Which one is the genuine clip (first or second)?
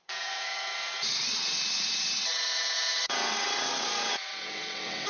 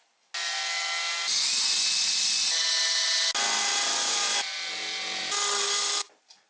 second